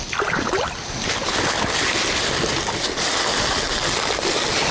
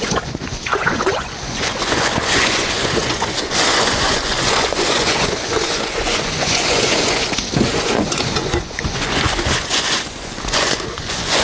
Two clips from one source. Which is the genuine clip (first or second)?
first